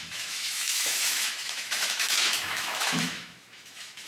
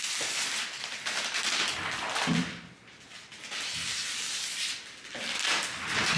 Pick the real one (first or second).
second